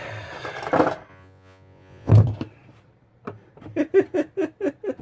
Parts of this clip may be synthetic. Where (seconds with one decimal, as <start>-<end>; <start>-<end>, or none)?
1.1-2.1